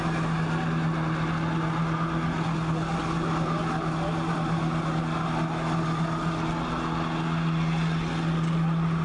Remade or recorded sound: recorded